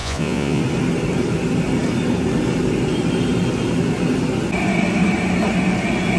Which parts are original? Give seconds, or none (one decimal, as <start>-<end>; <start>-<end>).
0.6-6.2